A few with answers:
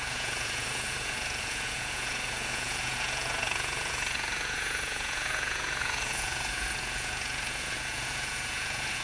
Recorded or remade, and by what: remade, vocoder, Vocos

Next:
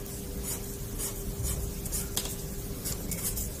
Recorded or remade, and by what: recorded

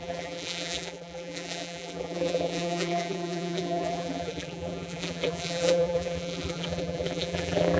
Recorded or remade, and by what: remade, vocoder, BigVGAN v2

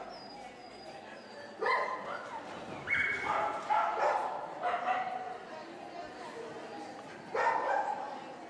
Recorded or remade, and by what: recorded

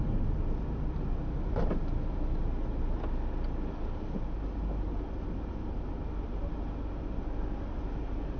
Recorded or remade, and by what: recorded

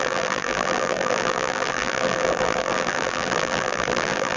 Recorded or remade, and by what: remade, vocoder, BigVGAN v2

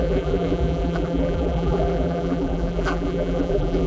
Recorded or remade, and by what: remade, vocoder, BigVGAN v2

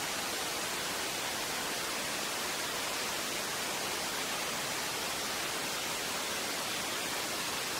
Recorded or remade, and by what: recorded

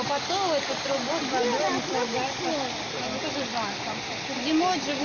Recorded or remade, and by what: recorded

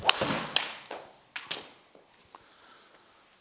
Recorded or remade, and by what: recorded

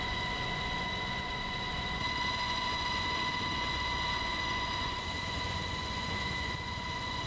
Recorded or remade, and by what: remade, vocoder, Vocos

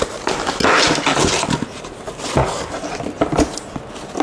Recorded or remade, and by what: recorded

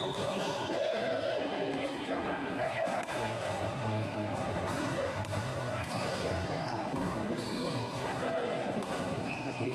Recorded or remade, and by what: remade, codec, SNAC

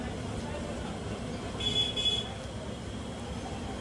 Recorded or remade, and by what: recorded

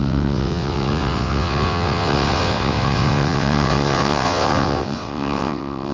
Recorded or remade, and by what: remade, vocoder, WaveNeXt